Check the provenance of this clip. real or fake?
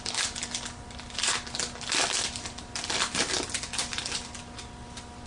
real